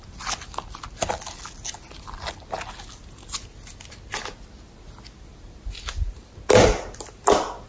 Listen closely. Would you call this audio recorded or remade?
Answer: recorded